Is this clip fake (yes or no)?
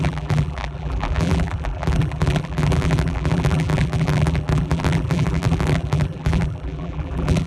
yes